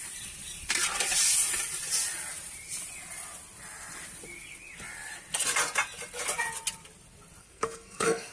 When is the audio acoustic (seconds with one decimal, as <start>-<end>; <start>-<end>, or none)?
0.0-7.4

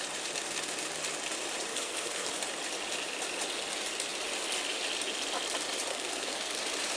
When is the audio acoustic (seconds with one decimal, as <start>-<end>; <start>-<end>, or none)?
0.0-1.7; 2.3-5.9; 6.5-7.0

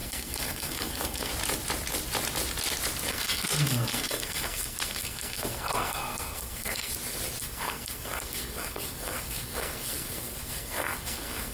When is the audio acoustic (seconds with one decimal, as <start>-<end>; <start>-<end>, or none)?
1.3-3.1; 6.9-7.4

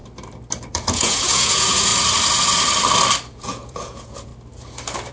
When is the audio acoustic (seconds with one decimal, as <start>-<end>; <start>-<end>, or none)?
0.0-0.7; 1.9-3.3; 4.3-5.1

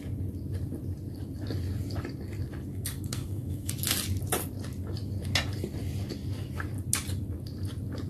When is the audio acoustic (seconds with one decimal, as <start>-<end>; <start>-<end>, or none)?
0.0-2.7; 3.7-8.1

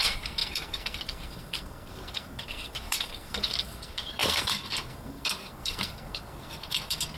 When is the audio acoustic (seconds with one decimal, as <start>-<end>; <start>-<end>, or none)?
none

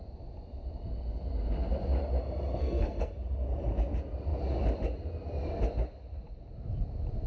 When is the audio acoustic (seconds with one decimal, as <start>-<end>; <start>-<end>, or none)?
0.0-2.5; 3.1-7.3

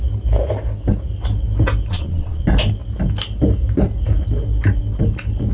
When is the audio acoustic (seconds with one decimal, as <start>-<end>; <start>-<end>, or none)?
0.0-1.9; 2.4-5.5